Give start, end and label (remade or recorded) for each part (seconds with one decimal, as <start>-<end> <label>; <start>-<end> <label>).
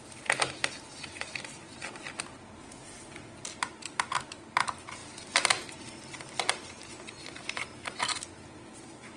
0.0-9.2 recorded